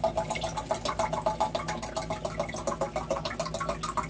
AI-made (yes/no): no